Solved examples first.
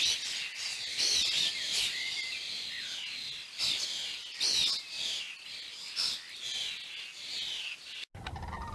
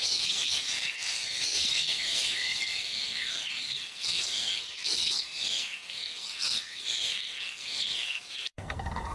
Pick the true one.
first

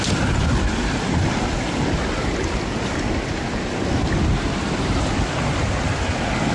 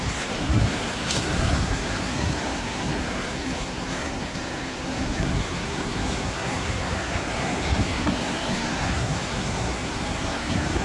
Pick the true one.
first